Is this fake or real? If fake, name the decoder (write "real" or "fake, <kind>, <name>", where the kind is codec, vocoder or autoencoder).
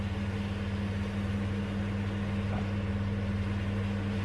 real